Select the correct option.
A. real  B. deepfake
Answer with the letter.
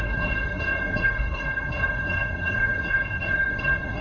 B